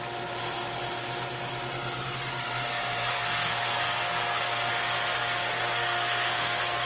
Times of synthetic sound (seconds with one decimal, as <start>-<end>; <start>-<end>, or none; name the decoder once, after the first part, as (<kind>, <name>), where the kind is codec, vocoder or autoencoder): 3.1-4.7 (codec, SNAC); 5.2-6.9